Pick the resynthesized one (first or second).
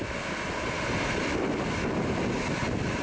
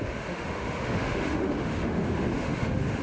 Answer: second